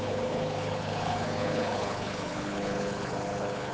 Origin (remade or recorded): remade